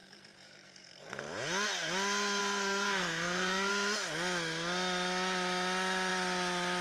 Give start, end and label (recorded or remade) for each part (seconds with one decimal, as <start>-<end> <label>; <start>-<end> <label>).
0.0-1.2 remade; 1.2-2.4 recorded; 2.4-3.7 remade; 3.7-6.8 recorded